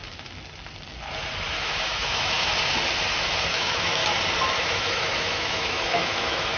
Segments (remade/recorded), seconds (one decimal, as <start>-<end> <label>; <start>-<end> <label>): 0.0-1.6 recorded; 1.6-2.5 remade; 2.5-3.5 recorded; 3.5-4.0 remade; 4.0-4.5 recorded; 4.5-6.6 remade